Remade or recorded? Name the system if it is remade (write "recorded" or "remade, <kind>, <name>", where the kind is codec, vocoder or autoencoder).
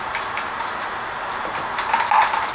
recorded